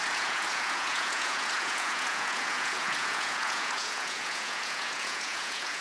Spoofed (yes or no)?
yes